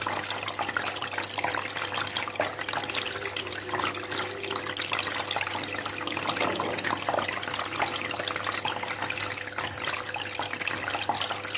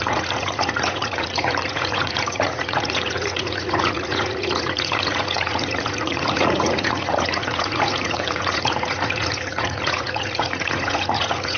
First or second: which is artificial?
second